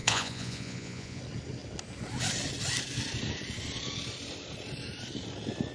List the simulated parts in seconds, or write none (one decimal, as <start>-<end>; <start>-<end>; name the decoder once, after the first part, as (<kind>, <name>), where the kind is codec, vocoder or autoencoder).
0.0-1.2 (vocoder, Vocos)